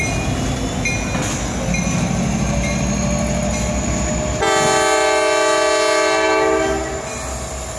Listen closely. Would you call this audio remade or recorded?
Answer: recorded